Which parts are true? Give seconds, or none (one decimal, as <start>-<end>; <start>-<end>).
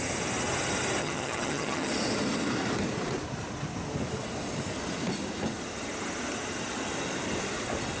0.0-1.0; 1.9-8.0